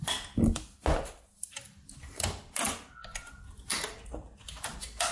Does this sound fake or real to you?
real